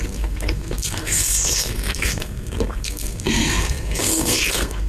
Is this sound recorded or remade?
remade